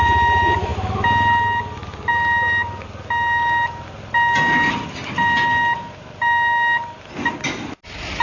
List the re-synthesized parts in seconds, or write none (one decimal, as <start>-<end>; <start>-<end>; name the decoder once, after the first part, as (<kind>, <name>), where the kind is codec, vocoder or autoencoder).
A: none